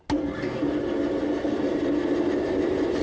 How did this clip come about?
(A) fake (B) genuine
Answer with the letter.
B